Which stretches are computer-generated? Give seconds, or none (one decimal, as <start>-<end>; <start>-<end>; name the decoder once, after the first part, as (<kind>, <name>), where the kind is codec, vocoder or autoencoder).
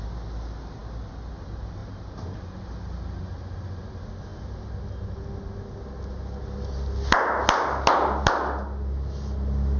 none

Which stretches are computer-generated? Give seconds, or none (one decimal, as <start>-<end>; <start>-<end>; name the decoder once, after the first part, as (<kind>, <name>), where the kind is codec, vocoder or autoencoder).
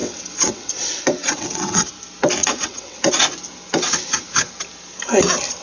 0.0-0.7 (vocoder, WaveNeXt); 1.2-1.9; 2.4-3.1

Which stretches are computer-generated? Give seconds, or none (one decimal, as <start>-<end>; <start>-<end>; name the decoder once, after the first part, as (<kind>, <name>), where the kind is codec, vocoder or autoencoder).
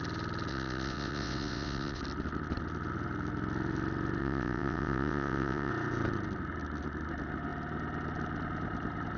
0.5-2.0 (vocoder, WaveNeXt); 4.2-5.7